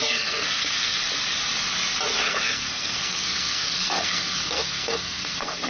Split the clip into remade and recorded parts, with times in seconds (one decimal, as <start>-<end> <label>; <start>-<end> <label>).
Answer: 0.0-1.0 remade; 1.0-2.2 recorded; 2.2-5.7 remade